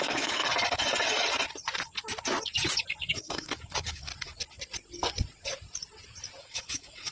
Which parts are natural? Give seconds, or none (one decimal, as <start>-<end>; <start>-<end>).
0.4-3.1; 4.1-6.4